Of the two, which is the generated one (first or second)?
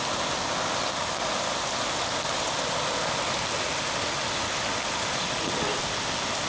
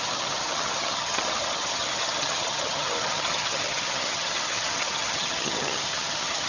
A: second